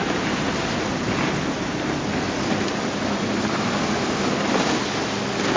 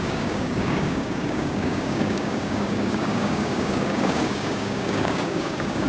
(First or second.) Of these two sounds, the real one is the first